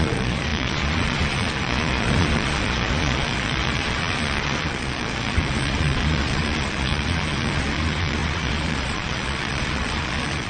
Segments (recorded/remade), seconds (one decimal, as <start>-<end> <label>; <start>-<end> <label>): 0.0-10.5 remade